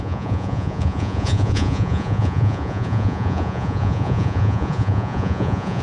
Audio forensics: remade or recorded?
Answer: remade